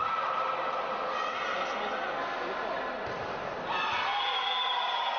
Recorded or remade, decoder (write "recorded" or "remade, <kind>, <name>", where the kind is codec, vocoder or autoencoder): recorded